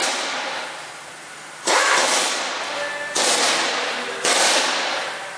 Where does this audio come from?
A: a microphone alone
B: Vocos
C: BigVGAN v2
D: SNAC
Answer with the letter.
A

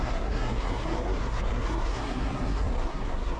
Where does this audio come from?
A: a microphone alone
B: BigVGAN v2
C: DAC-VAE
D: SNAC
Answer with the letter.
D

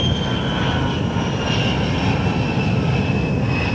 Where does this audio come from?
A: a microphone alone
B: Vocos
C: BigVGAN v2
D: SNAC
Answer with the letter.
A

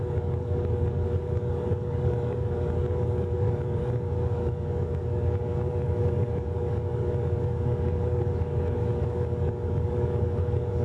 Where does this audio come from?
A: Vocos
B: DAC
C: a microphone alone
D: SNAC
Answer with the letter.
B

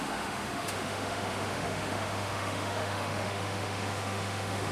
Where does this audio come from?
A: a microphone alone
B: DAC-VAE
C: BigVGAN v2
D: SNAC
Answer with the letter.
B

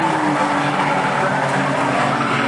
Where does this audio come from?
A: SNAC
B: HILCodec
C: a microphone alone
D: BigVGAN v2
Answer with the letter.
C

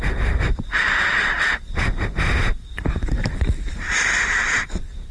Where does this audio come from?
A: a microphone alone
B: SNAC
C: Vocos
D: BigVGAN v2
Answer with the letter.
D